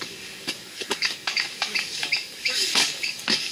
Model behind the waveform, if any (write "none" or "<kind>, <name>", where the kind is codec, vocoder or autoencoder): codec, DAC